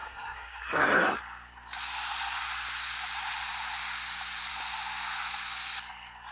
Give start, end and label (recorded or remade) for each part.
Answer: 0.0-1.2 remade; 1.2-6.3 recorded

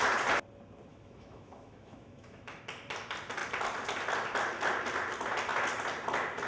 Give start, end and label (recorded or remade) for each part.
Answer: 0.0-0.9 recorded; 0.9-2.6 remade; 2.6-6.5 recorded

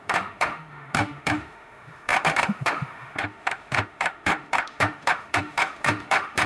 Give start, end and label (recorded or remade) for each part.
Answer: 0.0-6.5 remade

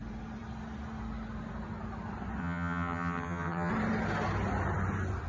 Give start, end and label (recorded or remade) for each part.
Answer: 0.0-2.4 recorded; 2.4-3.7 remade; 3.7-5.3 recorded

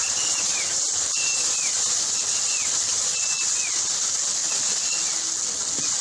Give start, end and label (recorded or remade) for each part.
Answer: 0.0-1.9 remade; 1.9-6.0 recorded